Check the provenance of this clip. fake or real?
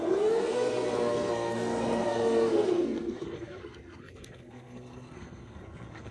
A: fake